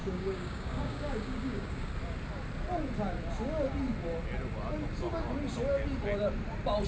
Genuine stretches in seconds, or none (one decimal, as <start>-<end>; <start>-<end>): 1.9-6.9